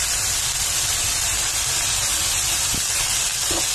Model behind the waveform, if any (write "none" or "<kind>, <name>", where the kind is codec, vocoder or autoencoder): none